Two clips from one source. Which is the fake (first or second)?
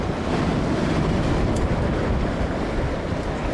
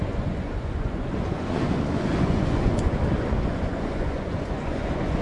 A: second